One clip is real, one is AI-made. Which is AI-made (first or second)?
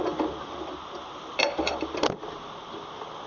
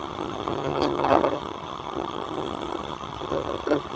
second